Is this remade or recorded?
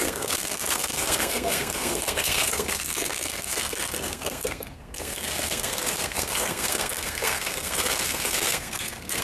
remade